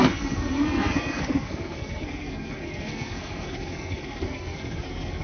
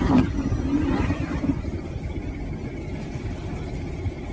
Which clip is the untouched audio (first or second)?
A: second